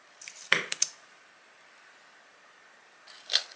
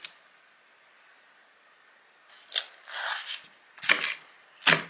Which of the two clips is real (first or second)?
second